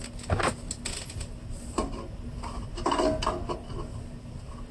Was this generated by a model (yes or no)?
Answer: no